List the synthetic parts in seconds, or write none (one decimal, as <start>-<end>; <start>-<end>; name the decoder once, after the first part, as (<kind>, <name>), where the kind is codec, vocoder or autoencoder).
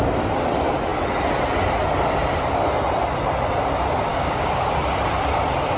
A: 4.1-4.7 (codec, DAC)